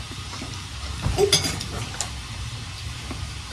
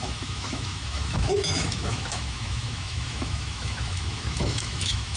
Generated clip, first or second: second